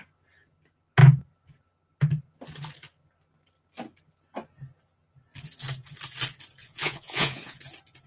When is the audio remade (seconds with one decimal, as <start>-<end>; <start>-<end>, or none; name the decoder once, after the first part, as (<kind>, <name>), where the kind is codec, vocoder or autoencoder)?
6.6-7.6 (vocoder, Vocos)

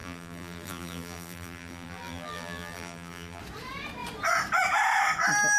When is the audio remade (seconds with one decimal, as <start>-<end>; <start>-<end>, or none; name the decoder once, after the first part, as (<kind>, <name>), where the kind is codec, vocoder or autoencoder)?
0.0-3.4 (vocoder, BigVGAN v2)

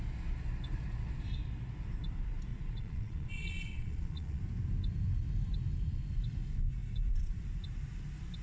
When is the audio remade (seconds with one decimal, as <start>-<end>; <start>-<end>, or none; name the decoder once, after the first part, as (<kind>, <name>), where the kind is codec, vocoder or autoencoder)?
2.5-4.4 (vocoder, Vocos)

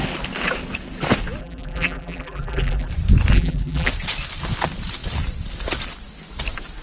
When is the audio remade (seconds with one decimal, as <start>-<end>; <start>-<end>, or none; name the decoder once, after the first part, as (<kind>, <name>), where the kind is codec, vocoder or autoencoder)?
1.4-2.9 (vocoder, BigVGAN v2); 3.3-3.9